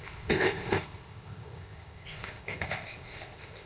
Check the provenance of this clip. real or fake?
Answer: fake